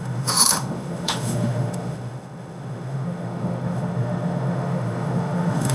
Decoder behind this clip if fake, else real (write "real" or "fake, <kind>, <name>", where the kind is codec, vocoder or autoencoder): fake, autoencoder, DAC-VAE